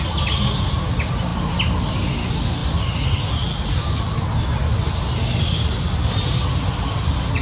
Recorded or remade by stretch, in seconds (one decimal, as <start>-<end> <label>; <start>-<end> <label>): 0.0-7.4 recorded